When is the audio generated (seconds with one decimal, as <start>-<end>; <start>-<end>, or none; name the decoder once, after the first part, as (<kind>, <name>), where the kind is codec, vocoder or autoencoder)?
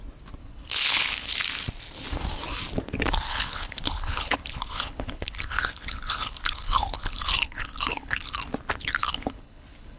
0.4-1.4 (codec, HILCodec); 3.3-8.3; 9.0-10.0